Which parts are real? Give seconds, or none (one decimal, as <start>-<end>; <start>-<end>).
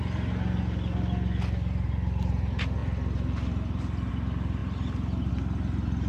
0.0-6.1